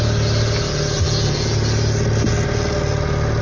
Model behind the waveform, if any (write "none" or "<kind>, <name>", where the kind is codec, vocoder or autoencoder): none